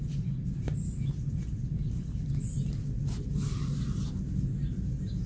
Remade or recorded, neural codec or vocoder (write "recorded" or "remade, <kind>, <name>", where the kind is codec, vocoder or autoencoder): recorded